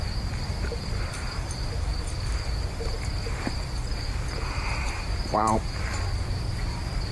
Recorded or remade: remade